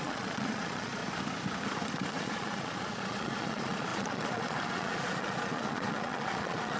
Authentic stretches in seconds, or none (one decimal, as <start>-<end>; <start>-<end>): 1.0-2.2